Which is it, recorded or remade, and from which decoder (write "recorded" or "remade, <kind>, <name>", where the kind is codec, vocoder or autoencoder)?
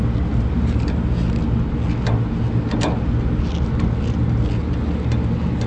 recorded